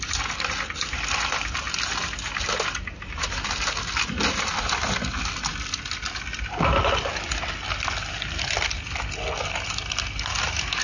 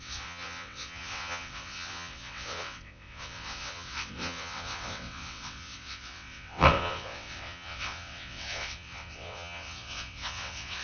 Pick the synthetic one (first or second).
second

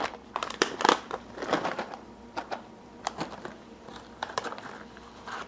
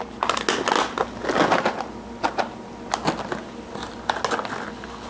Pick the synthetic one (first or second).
first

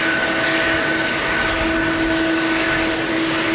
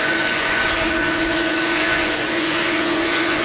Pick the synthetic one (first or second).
second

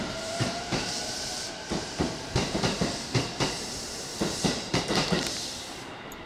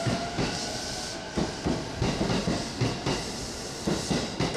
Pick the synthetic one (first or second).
first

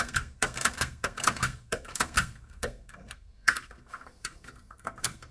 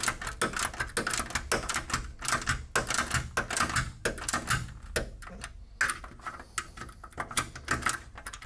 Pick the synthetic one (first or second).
first